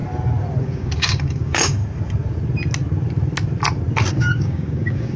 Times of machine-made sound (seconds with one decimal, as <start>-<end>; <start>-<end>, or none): 0.6-1.8; 4.1-5.2

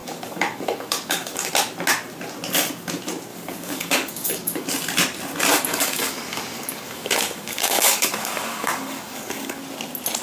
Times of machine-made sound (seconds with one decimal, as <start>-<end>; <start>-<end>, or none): 0.0-1.5; 3.3-4.7; 5.5-9.6